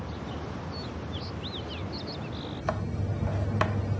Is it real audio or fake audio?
real